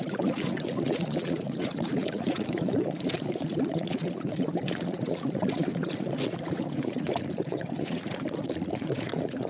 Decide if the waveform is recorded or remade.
remade